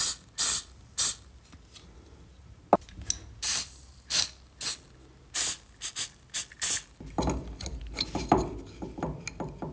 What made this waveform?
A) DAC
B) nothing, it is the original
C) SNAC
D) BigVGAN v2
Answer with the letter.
B